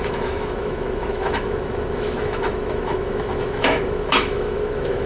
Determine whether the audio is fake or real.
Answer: fake